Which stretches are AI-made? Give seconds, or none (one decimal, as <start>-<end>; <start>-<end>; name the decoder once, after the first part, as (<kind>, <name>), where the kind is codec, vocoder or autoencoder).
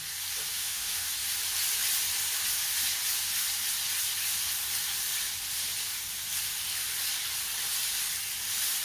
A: 0.5-1.1 (autoencoder, DAC-VAE)